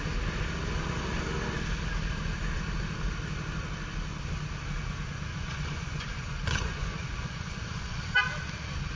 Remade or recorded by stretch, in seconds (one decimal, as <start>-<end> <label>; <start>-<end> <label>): 0.0-5.3 recorded; 5.3-8.2 remade; 8.2-9.0 recorded